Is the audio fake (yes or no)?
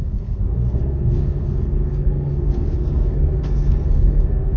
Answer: yes